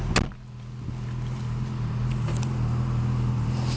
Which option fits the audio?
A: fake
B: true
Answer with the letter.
B